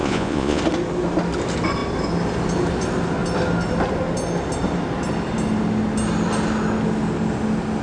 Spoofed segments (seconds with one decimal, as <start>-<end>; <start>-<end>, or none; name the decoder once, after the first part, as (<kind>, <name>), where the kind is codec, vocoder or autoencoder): 0.0-0.6 (vocoder, Vocos)